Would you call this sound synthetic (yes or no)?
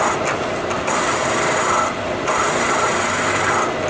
no